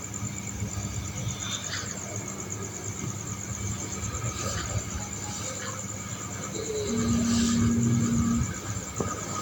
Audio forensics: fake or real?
real